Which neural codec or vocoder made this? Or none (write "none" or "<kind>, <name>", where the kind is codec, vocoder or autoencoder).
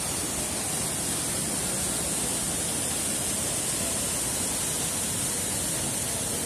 none